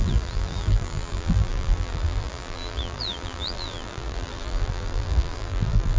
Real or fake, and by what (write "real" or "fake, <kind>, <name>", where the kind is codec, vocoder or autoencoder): fake, vocoder, BigVGAN v2